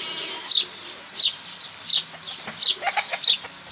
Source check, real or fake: real